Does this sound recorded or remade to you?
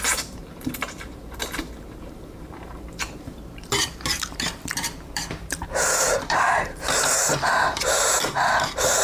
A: remade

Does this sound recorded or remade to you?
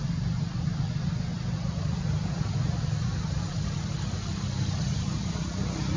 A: recorded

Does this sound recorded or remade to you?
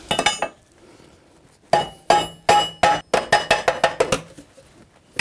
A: recorded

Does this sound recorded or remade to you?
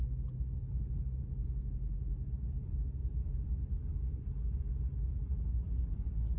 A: recorded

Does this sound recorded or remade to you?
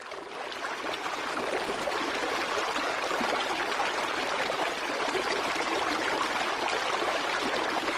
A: recorded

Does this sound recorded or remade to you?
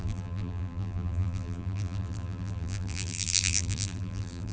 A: remade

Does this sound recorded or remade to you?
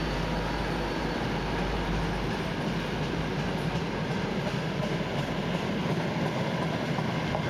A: recorded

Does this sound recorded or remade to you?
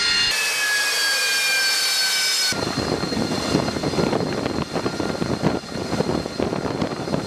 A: recorded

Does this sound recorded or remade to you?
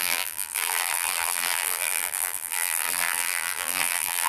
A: remade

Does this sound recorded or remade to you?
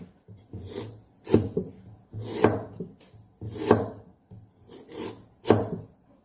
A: recorded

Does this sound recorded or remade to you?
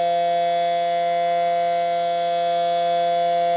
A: recorded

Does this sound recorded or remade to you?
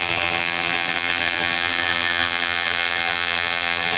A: remade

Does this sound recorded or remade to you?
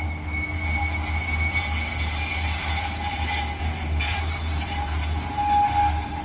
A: recorded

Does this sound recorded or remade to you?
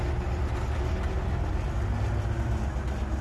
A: recorded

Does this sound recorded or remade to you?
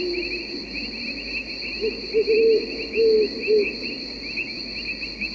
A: recorded